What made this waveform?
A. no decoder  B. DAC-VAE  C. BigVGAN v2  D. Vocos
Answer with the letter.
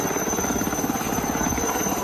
A